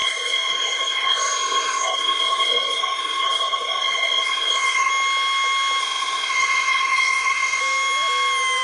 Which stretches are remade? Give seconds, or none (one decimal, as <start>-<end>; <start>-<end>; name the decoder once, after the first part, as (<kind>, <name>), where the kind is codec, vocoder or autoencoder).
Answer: 0.0-4.9 (codec, SNAC); 5.8-7.6